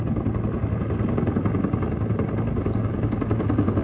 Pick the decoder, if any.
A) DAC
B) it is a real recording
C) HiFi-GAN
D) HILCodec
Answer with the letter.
B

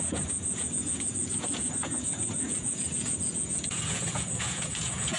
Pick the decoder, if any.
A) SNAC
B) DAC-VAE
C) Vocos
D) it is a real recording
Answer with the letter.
C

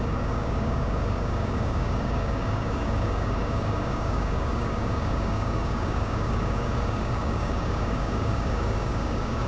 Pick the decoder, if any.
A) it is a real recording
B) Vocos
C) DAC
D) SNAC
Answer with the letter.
C